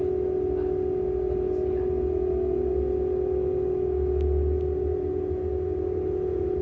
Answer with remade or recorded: recorded